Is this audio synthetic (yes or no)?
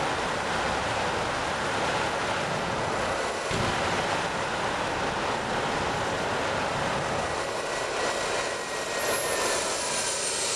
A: no